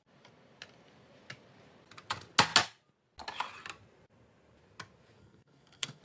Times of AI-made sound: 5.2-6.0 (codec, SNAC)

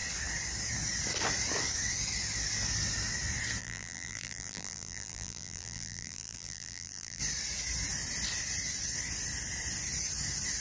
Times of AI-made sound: 3.6-7.2 (vocoder, BigVGAN v2)

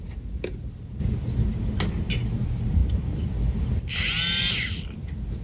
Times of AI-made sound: none

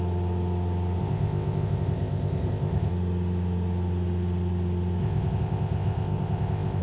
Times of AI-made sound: 1.0-2.9 (codec, ZipCodec); 5.0-6.8

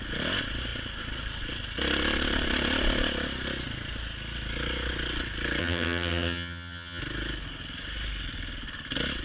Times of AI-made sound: 5.6-7.0 (vocoder, HiFi-GAN)

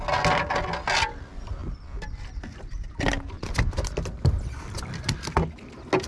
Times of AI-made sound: none

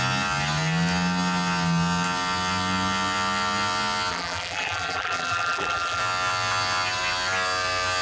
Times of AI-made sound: 4.1-6.0 (vocoder, BigVGAN v2)